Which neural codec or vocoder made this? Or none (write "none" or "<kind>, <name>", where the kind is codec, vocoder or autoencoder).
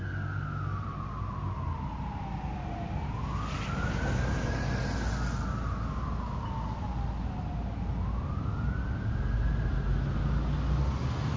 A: none